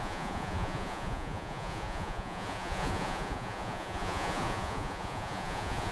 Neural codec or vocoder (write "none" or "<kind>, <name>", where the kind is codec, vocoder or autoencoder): vocoder, Vocos